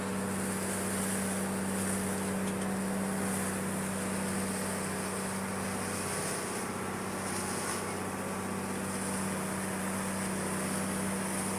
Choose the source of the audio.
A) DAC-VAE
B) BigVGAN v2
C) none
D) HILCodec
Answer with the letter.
C